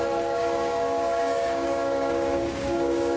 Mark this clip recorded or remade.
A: remade